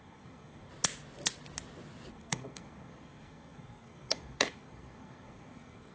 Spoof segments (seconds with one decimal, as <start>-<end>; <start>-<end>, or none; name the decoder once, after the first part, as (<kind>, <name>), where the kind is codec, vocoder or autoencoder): 0.0-0.7 (codec, SNAC); 2.1-5.9